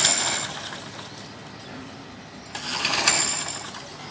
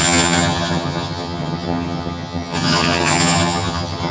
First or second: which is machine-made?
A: second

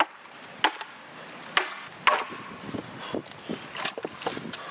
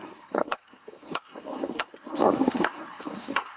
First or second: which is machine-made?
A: second